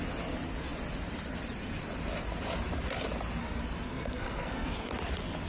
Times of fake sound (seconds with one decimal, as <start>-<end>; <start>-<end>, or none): 3.9-4.9

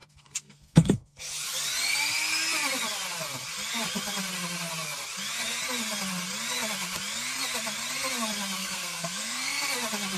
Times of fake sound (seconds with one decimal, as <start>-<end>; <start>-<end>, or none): 0.0-1.2; 8.6-9.6

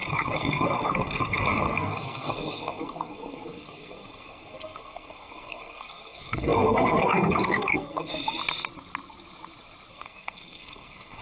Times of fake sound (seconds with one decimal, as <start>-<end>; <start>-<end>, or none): 0.0-8.4; 9.9-11.2

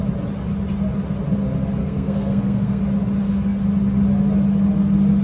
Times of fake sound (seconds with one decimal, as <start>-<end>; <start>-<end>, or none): 1.8-2.8

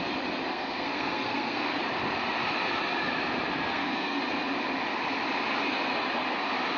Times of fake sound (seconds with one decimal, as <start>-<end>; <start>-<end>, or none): 0.5-1.8; 3.7-4.2

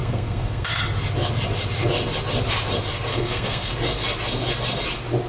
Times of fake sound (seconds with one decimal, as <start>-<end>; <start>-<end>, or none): 0.0-0.8; 3.1-3.7